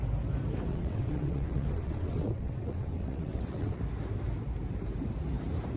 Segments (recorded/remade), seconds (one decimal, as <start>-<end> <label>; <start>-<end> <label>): 0.0-0.7 recorded; 0.7-3.8 remade; 3.8-5.8 recorded